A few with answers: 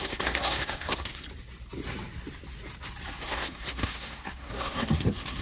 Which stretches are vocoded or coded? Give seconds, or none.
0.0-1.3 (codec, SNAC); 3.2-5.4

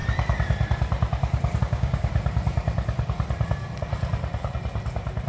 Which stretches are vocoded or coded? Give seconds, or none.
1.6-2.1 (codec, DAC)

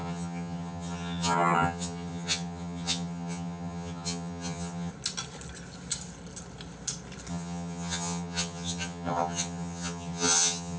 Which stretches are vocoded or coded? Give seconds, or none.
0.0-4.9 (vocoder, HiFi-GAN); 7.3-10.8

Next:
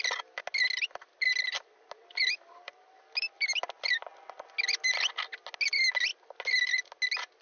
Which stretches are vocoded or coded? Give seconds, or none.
2.0-3.4 (vocoder, BigVGAN v2)

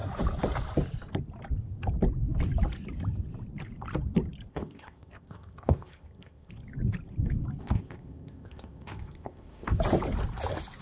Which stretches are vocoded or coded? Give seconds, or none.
4.5-6.5 (codec, ZipCodec); 7.6-9.8

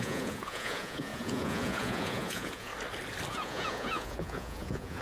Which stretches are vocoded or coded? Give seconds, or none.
0.0-2.7 (vocoder, Vocos); 3.3-5.0

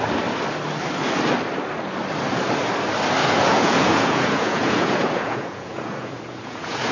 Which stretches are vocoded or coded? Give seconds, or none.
3.2-6.9 (vocoder, Vocos)

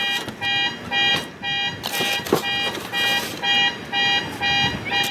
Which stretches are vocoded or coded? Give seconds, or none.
none